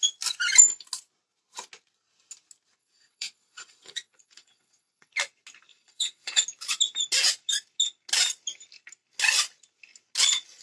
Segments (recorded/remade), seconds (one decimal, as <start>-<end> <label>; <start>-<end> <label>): 0.0-2.8 recorded; 2.8-5.1 remade; 5.1-5.7 recorded; 5.7-6.4 remade; 6.4-10.6 recorded

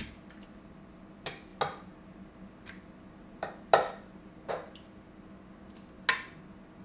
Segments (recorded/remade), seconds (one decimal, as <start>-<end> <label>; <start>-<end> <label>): 0.0-6.8 recorded

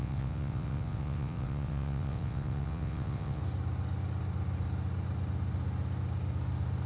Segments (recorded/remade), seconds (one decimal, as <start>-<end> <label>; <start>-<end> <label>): 0.0-3.4 remade; 3.4-6.9 recorded

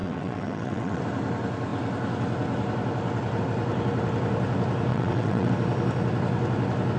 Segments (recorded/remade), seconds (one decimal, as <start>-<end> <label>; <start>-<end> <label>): 0.0-1.0 remade; 1.0-4.9 recorded; 4.9-5.5 remade; 5.5-7.0 recorded

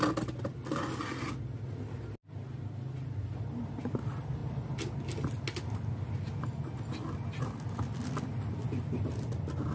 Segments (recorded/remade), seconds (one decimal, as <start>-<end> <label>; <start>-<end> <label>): 0.0-9.7 recorded

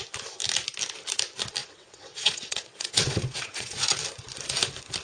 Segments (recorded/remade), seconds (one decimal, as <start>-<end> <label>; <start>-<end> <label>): 0.0-1.6 recorded; 1.6-3.8 remade; 3.8-5.0 recorded